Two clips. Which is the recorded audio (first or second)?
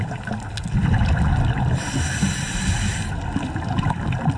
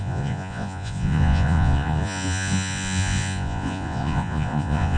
first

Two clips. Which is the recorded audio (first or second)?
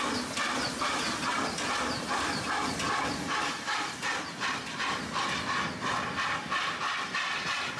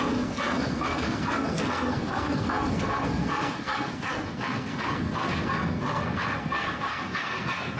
first